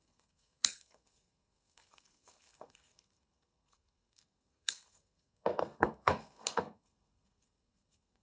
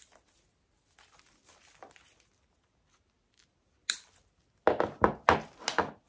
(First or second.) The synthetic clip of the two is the first